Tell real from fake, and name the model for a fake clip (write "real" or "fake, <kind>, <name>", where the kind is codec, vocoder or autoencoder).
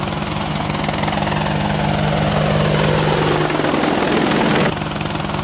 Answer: real